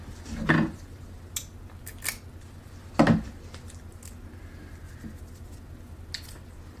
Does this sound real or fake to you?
real